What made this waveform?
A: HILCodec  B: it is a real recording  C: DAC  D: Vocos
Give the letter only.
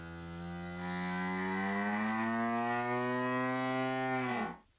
B